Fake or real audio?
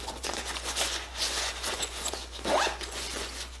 fake